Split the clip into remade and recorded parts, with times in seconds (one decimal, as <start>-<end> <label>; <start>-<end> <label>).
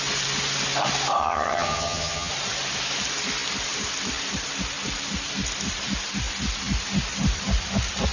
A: 0.0-1.2 recorded; 1.2-2.3 remade; 2.3-8.1 recorded